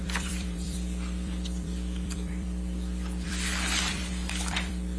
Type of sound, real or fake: fake